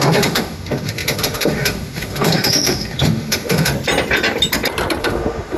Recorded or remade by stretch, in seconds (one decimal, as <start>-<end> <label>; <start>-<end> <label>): 0.0-3.7 remade; 3.7-5.0 recorded; 5.0-5.6 remade